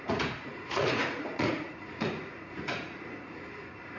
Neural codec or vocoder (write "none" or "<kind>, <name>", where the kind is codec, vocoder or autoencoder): vocoder, Vocos